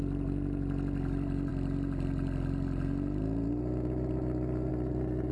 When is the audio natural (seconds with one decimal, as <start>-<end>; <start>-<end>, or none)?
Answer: 0.0-5.3